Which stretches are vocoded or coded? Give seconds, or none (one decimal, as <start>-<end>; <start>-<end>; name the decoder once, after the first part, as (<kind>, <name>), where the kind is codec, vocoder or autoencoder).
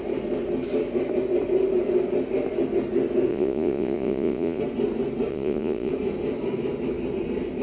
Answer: 3.3-4.6 (vocoder, Vocos); 5.3-5.9